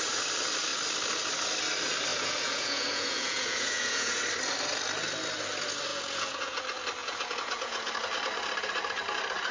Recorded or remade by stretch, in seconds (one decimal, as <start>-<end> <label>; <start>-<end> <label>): 0.0-2.1 recorded; 2.1-4.2 remade; 4.2-5.9 recorded; 5.9-6.6 remade; 6.6-7.0 recorded; 7.0-7.9 remade; 7.9-9.5 recorded